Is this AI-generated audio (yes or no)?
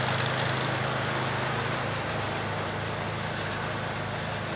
no